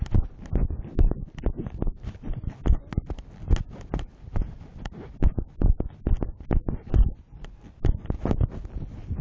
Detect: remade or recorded recorded